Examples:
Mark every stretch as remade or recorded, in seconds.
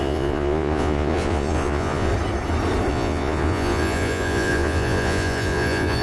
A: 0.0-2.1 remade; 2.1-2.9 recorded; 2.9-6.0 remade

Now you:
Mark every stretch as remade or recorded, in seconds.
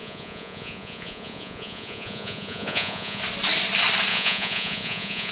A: 0.0-3.2 remade; 3.2-4.1 recorded; 4.1-5.3 remade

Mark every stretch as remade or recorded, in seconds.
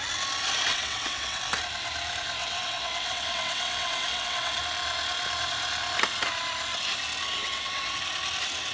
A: 0.0-0.7 recorded; 0.7-1.4 remade; 1.4-2.4 recorded; 2.4-4.6 remade; 4.6-7.4 recorded; 7.4-8.0 remade; 8.0-8.7 recorded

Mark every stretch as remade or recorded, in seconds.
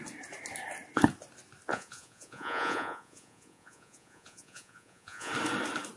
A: 0.0-1.7 recorded; 1.7-5.3 remade; 5.3-6.0 recorded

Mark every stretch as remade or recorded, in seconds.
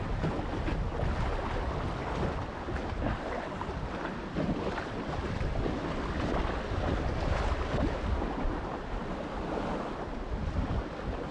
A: 0.0-11.3 recorded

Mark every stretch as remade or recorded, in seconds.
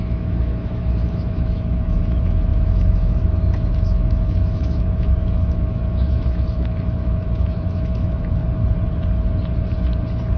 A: 0.0-8.4 remade; 8.4-10.4 recorded